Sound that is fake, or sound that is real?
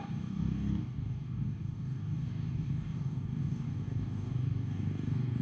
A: fake